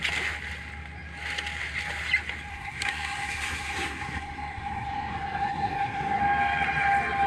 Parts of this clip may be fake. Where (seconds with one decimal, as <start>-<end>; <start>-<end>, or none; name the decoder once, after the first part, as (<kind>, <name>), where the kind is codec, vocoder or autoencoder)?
2.5-6.2 (codec, SNAC)